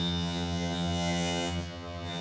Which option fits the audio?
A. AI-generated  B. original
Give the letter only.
A